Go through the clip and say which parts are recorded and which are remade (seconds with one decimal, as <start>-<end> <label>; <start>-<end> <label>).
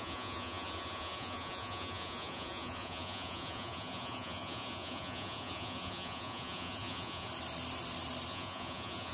0.0-7.3 remade; 7.3-8.3 recorded; 8.3-9.1 remade